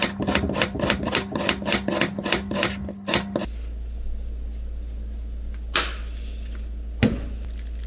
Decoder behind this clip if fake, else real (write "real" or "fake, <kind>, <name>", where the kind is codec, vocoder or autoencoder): real